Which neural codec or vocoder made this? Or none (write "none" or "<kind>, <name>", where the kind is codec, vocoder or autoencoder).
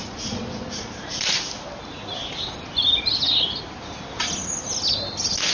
none